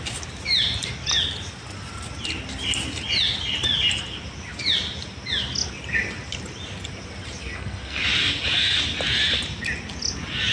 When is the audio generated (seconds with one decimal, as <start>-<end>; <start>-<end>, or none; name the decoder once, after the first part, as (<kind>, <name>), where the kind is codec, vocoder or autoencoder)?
7.4-8.0 (codec, SNAC)